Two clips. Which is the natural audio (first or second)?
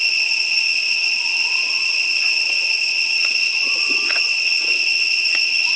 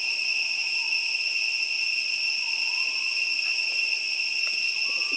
second